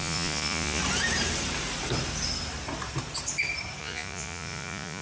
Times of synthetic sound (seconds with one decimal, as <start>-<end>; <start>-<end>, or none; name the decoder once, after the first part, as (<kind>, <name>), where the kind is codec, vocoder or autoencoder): 0.0-0.8 (vocoder, Vocos); 3.8-5.0